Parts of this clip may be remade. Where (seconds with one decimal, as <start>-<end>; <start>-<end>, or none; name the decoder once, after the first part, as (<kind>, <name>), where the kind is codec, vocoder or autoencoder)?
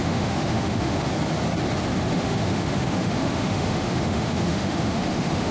0.0-1.1 (autoencoder, DAC-VAE); 2.1-5.5